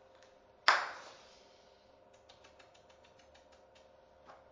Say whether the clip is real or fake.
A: real